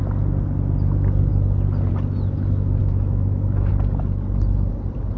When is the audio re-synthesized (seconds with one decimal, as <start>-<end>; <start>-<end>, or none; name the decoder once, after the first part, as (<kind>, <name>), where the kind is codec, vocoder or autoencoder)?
2.8-3.7 (autoencoder, DAC-VAE)